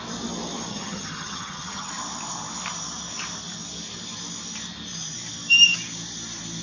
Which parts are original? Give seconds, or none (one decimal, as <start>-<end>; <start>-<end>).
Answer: 0.0-0.7; 1.9-6.6